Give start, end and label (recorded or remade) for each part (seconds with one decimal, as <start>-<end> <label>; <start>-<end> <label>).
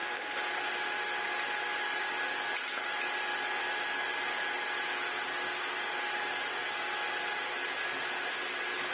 0.0-8.9 recorded